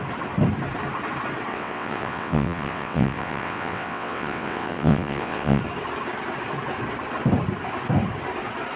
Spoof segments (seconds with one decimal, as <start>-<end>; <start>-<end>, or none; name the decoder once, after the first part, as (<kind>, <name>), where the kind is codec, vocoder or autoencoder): 1.5-5.6 (vocoder, WaveNeXt)